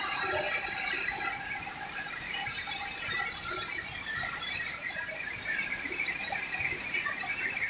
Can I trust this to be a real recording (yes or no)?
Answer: no